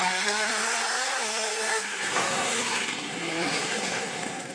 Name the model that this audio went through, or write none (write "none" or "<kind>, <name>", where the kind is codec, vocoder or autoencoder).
codec, SNAC